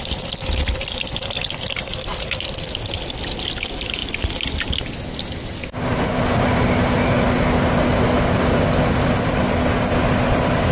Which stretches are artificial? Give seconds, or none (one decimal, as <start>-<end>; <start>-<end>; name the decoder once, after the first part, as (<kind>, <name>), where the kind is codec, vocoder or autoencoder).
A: none